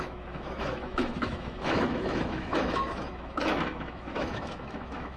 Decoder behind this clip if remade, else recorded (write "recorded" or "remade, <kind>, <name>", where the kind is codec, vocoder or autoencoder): remade, autoencoder, DAC-VAE